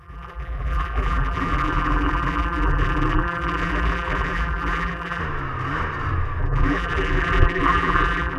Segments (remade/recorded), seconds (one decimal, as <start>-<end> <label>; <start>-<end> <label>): 0.0-5.2 remade; 5.2-6.4 recorded; 6.4-8.4 remade